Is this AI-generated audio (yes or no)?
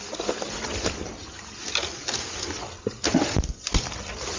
no